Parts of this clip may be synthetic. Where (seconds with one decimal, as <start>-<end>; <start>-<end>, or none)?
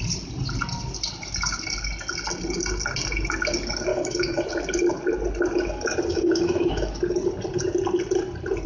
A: 3.9-4.5; 6.1-7.0